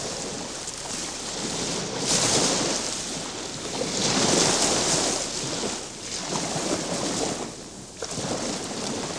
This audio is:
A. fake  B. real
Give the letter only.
B